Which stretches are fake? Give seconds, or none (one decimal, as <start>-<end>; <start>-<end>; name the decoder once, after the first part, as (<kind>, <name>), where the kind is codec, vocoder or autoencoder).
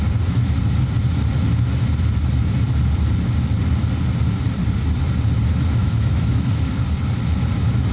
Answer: 5.8-6.7 (autoencoder, DAC-VAE)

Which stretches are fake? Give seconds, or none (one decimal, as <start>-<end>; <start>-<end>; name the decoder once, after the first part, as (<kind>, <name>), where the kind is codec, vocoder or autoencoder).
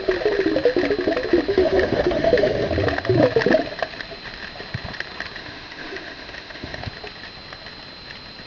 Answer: 1.5-2.7 (autoencoder, DAC-VAE); 5.4-6.9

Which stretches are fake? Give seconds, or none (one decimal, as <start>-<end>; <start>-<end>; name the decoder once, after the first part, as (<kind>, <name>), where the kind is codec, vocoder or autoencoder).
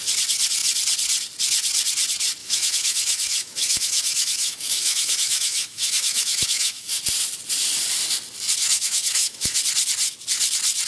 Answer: 2.4-7.0 (autoencoder, DAC-VAE); 8.6-9.6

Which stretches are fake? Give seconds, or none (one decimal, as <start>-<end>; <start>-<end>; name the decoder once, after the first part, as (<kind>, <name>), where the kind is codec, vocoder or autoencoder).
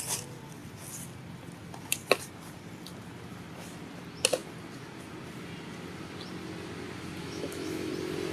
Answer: 7.2-7.9 (autoencoder, DAC-VAE)